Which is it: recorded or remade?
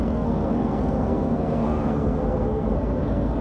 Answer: remade